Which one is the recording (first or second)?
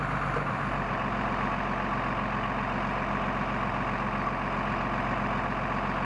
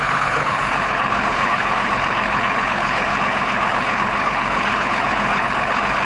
first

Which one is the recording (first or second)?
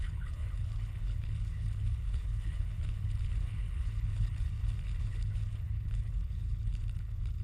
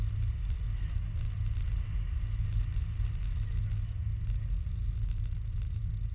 second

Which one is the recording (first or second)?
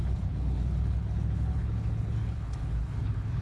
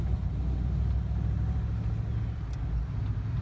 second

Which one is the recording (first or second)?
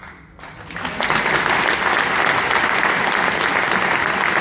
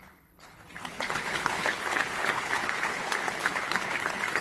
first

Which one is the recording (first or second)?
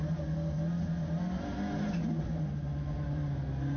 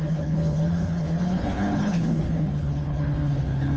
first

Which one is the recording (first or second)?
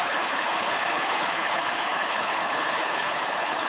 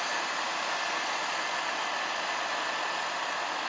second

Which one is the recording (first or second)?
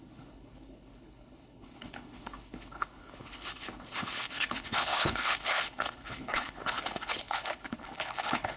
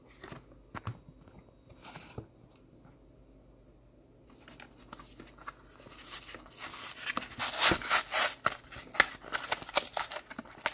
second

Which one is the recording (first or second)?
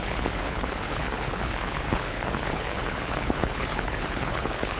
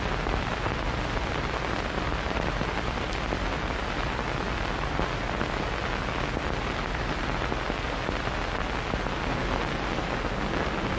second